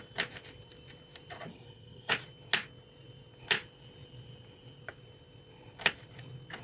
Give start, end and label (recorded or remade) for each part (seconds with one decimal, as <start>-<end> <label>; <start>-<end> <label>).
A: 0.0-1.5 recorded; 1.5-2.1 remade; 2.1-6.6 recorded